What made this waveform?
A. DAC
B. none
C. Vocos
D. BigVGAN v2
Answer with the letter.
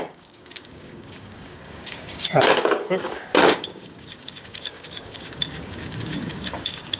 A